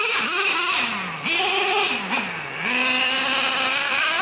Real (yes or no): yes